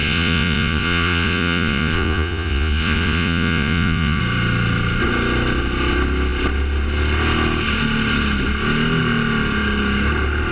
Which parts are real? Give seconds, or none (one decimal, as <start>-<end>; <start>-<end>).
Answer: 4.2-10.5